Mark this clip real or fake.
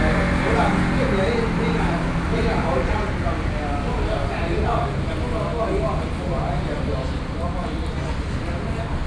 real